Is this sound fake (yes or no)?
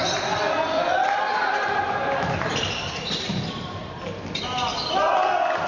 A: no